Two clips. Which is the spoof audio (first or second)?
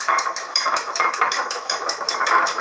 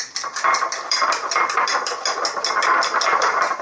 first